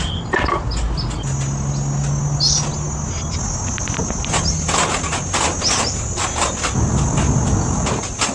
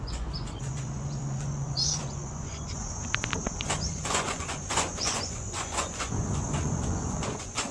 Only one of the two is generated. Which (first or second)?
second